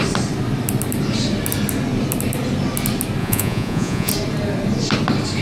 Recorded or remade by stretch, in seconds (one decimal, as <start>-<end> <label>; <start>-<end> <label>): 0.0-3.2 recorded; 3.2-4.1 remade; 4.1-5.4 recorded